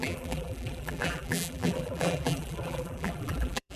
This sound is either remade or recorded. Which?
remade